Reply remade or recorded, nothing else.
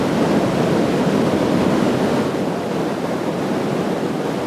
recorded